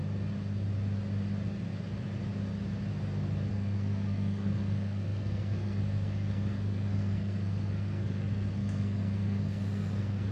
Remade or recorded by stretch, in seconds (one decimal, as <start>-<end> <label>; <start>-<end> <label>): 0.0-3.5 recorded; 3.5-10.3 remade